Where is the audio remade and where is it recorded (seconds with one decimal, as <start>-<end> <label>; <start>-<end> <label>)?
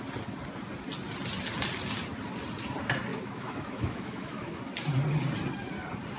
0.0-3.1 recorded; 3.1-4.6 remade; 4.6-6.2 recorded